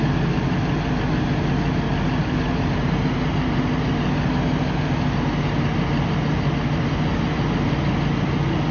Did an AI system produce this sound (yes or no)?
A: no